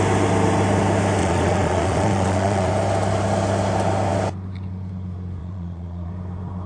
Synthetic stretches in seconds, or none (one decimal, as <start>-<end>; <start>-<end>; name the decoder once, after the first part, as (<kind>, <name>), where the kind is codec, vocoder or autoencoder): 1.2-2.7 (vocoder, Vocos); 5.4-6.1